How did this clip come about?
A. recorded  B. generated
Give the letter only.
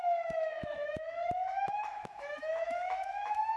B